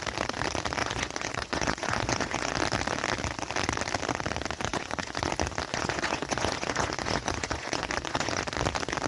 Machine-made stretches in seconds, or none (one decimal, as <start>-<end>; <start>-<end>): 0.8-2.5; 4.7-5.3; 5.7-8.4